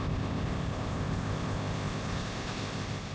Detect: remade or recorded remade